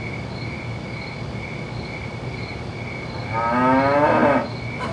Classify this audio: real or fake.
real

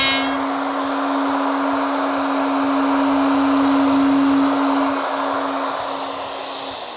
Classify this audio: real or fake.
real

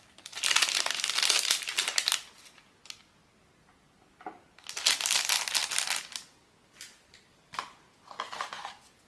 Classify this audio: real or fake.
real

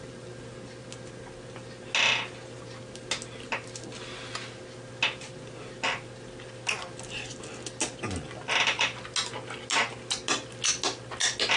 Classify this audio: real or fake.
real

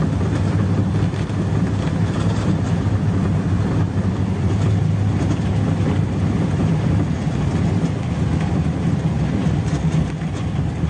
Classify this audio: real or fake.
real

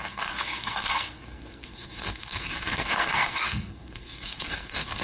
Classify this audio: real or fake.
fake